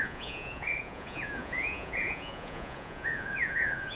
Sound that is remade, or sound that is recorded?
remade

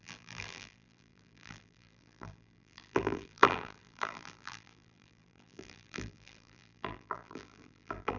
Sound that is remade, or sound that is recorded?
remade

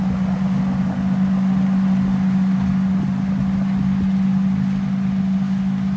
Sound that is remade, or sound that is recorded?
recorded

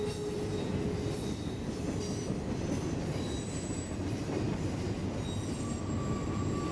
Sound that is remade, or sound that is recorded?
recorded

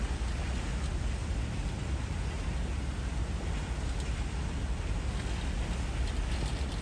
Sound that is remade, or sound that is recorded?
recorded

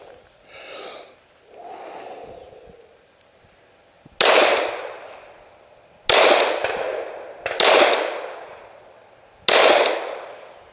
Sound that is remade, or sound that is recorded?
recorded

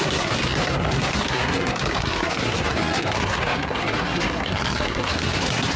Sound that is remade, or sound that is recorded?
remade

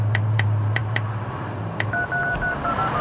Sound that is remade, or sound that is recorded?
remade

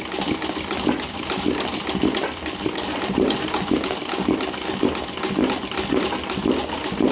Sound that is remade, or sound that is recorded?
recorded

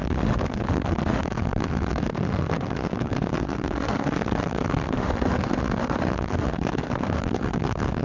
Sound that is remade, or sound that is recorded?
remade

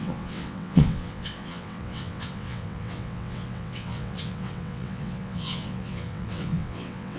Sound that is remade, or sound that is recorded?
remade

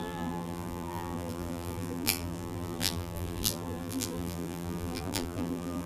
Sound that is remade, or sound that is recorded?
remade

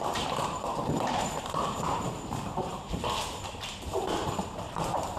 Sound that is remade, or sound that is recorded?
remade